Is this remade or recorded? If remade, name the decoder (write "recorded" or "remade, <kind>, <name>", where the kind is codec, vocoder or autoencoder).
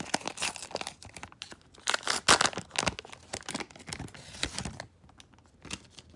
recorded